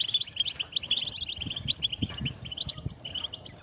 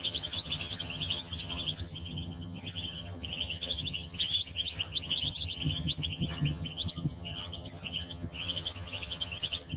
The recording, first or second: first